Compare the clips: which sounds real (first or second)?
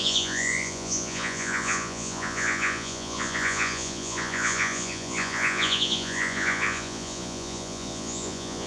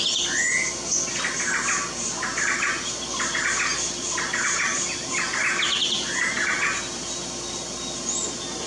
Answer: second